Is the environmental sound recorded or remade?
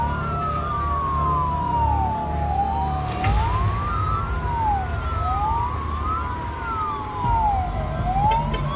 recorded